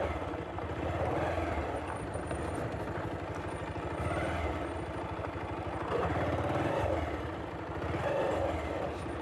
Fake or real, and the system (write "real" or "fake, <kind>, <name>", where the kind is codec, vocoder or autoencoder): real